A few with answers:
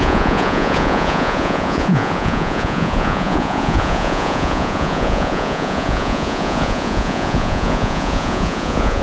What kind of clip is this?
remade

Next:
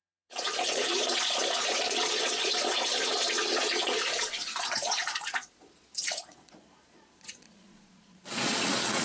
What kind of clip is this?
remade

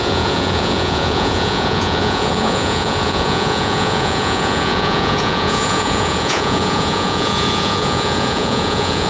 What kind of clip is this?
remade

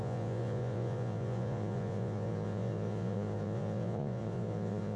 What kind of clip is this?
remade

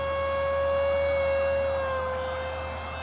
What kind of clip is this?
recorded